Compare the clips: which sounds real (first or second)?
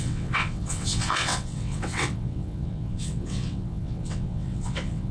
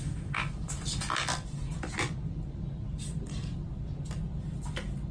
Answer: second